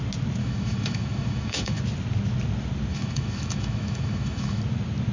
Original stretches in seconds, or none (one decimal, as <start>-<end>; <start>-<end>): 0.0-0.4; 1.8-2.9; 4.6-5.1